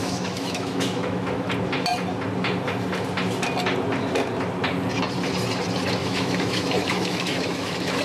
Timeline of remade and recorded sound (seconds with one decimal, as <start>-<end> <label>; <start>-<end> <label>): 0.0-1.5 remade; 1.5-6.0 recorded; 6.0-8.0 remade